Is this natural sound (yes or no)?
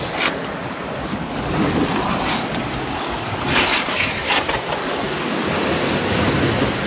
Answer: yes